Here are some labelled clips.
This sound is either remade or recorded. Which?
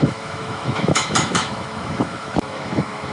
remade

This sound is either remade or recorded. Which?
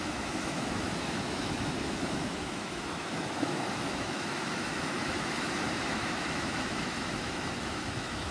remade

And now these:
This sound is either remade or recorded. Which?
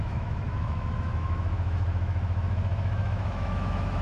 remade